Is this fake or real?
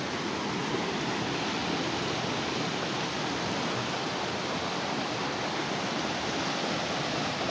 real